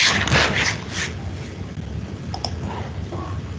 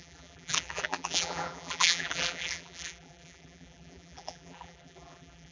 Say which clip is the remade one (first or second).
second